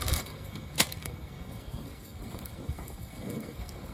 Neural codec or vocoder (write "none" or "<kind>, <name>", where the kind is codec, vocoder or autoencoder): codec, SNAC